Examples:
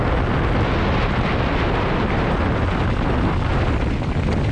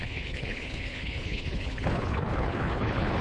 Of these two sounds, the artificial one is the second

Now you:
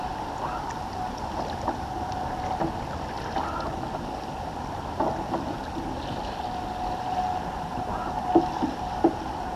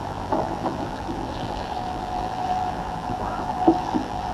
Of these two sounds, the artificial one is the second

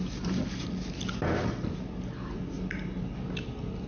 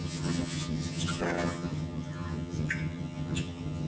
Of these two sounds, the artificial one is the second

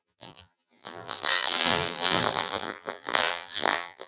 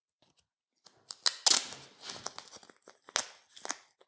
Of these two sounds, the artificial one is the first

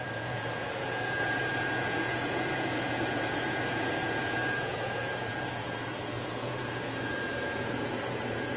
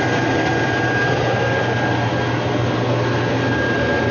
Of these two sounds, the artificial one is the first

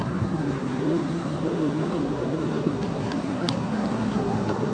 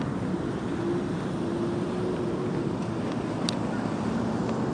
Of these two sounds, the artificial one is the first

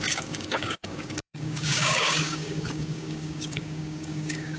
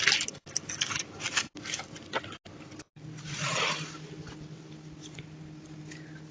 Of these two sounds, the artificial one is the first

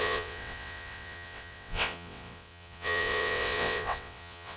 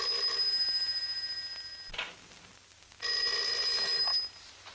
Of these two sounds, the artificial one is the first